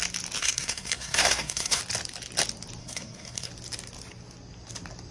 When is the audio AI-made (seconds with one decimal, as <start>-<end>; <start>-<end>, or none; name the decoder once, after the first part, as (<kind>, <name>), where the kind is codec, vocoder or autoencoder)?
0.4-1.8 (codec, SNAC); 2.8-3.5